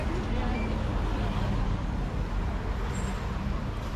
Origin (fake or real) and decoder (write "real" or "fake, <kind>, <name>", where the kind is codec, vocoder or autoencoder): real